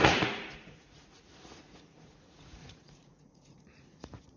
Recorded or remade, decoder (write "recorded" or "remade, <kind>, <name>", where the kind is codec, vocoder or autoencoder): remade, vocoder, Vocos